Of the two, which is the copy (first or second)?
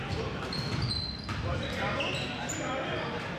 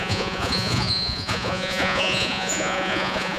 second